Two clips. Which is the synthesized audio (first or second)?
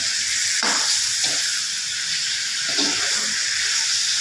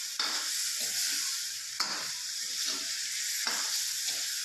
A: second